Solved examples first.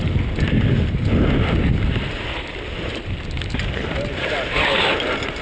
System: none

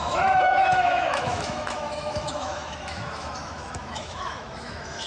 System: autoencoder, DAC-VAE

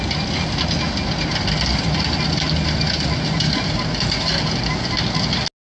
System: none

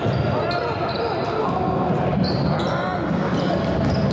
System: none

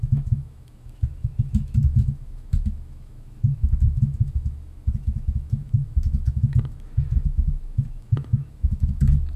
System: autoencoder, DAC-VAE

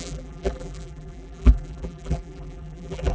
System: vocoder, BigVGAN v2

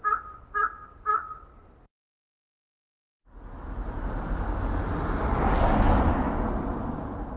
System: none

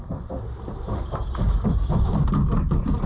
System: none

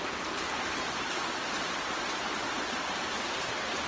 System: none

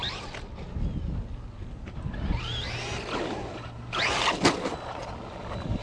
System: none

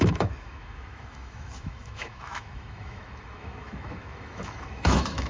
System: autoencoder, DAC-VAE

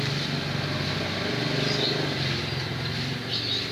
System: none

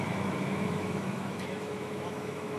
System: autoencoder, DAC-VAE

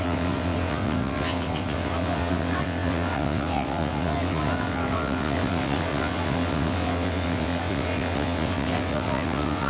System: vocoder, WaveNeXt